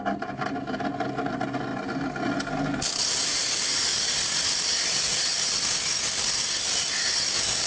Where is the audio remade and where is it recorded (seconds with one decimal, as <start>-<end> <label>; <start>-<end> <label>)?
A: 0.0-7.7 recorded